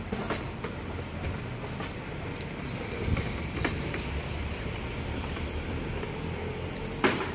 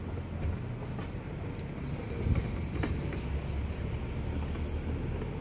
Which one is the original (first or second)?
second